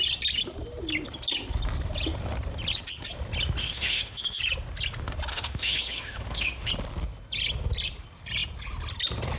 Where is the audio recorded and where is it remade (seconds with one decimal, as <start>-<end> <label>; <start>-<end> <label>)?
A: 0.0-3.6 recorded; 3.6-4.4 remade; 4.4-5.3 recorded; 5.3-6.7 remade; 6.7-9.4 recorded